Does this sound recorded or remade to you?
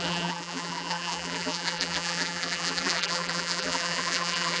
remade